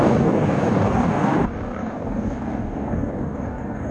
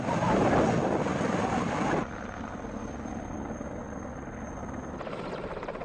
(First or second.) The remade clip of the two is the first